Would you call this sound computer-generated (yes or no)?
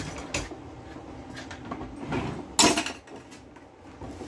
no